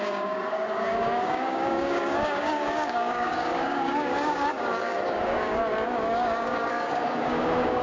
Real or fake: fake